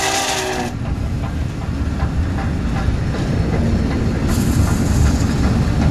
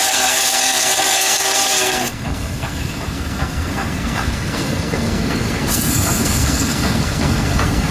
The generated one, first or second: second